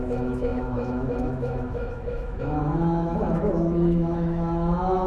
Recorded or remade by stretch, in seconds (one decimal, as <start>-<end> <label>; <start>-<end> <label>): 0.0-5.1 remade